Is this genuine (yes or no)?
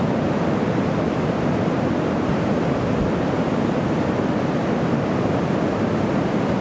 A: yes